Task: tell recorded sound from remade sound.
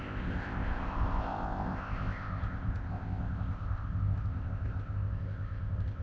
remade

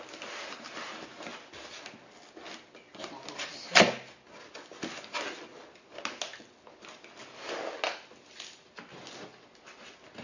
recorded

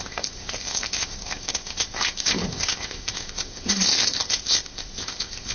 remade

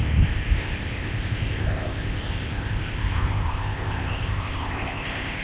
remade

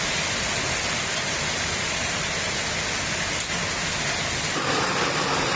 recorded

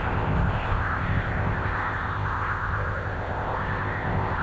remade